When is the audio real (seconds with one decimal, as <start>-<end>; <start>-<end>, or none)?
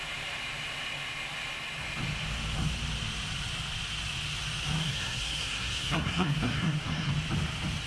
0.0-4.8; 7.1-7.9